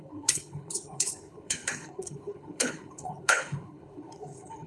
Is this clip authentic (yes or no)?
no